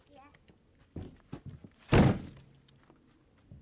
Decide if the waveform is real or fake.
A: real